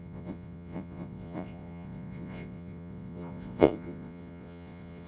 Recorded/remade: remade